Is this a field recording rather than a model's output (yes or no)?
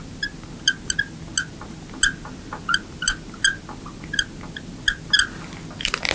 yes